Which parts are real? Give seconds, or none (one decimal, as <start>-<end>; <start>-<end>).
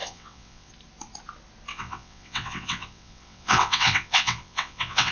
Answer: 0.7-1.7